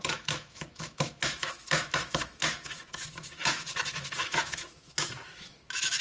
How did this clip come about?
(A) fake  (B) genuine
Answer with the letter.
A